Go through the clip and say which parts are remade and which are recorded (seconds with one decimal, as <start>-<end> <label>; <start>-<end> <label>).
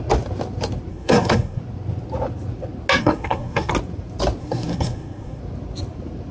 0.0-0.9 recorded; 0.9-1.6 remade; 1.6-3.0 recorded; 3.0-3.7 remade; 3.7-4.4 recorded; 4.4-5.4 remade; 5.4-6.3 recorded